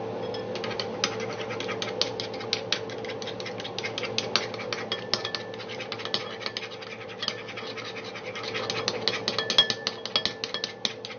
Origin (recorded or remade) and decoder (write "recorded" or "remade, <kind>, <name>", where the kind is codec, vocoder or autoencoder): recorded